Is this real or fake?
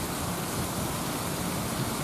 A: real